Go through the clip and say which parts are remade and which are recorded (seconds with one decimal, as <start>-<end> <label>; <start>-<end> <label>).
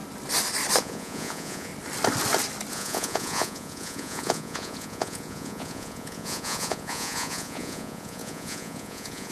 0.0-0.8 recorded; 0.8-1.7 remade; 1.7-2.7 recorded; 2.7-9.3 remade